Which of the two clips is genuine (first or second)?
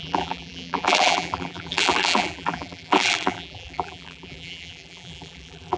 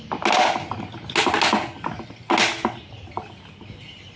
second